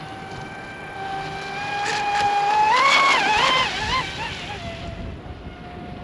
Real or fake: real